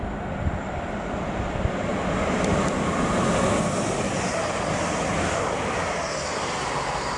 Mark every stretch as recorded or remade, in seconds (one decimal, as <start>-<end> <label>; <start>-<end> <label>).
0.0-1.9 recorded; 1.9-3.4 remade; 3.4-7.2 recorded